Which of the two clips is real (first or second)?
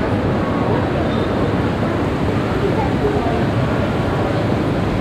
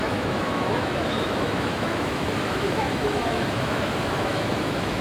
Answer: first